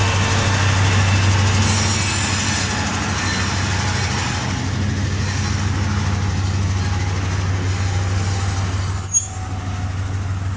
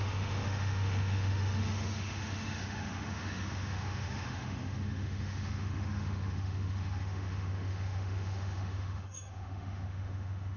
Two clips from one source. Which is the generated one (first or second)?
second